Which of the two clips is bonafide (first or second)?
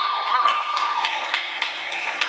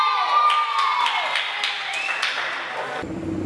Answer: second